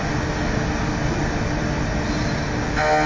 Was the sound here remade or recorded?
recorded